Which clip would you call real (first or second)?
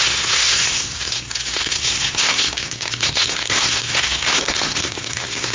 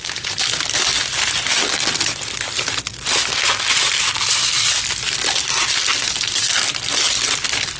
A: second